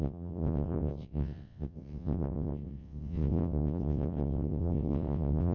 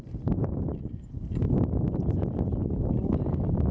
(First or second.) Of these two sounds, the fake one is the first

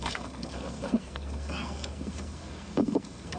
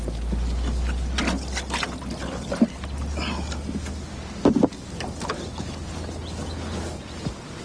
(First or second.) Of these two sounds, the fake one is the first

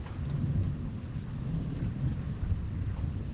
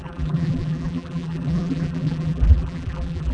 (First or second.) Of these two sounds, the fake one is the second